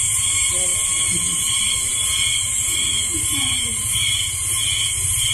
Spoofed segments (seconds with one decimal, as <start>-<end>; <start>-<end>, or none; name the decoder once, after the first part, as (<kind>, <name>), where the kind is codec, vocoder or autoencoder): 0.7-3.9 (vocoder, BigVGAN v2)